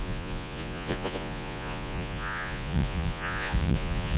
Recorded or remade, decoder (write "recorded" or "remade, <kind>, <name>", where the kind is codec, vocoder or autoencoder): remade, vocoder, Vocos